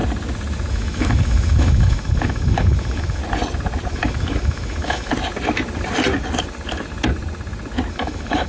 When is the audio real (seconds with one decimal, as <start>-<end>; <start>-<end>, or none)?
0.0-0.7; 3.2-3.9; 5.1-7.9